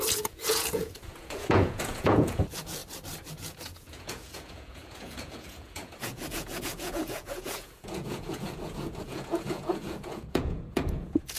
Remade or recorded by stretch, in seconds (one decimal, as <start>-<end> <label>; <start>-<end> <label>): 0.0-2.8 remade; 2.8-3.3 recorded; 3.3-11.4 remade

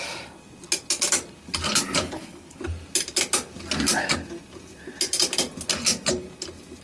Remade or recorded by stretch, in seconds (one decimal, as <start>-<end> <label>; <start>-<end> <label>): 0.0-2.0 recorded; 2.0-2.6 remade; 2.6-6.8 recorded

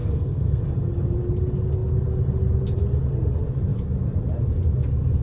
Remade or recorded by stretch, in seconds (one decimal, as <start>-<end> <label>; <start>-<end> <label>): 0.0-0.6 remade; 0.6-5.2 recorded

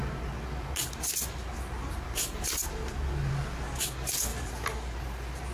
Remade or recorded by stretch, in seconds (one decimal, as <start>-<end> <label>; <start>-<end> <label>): 0.0-5.5 recorded

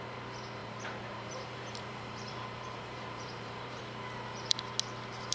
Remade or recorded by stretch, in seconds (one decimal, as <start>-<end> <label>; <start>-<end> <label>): 0.0-0.6 recorded; 0.6-3.8 remade; 3.8-5.3 recorded